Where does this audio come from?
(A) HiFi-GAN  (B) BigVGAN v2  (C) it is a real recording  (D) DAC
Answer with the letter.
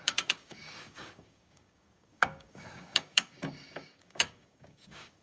D